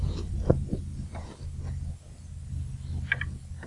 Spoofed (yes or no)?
no